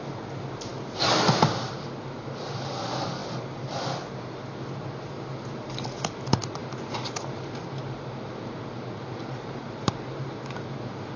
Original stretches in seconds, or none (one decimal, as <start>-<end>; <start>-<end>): 0.0-11.2